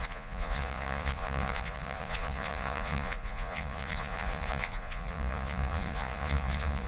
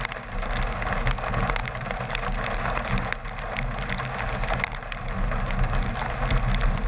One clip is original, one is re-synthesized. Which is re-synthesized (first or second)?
first